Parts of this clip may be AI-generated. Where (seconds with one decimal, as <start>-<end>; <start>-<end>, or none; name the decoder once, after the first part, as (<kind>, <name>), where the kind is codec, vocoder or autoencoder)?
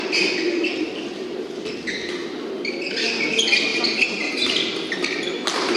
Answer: none